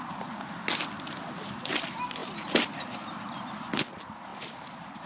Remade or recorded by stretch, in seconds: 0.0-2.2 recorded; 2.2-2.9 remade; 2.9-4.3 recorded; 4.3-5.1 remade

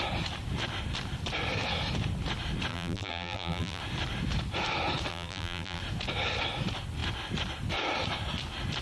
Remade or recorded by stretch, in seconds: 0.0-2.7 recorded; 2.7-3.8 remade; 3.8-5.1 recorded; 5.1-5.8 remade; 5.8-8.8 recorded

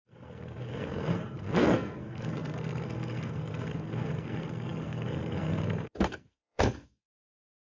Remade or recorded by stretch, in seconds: 0.0-7.7 remade